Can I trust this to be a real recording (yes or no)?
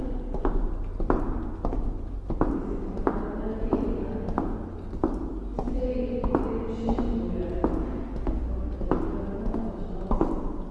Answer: yes